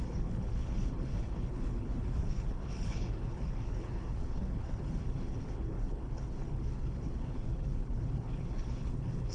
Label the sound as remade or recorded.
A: remade